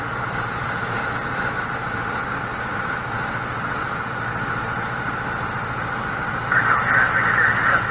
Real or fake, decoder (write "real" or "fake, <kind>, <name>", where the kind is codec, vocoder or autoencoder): real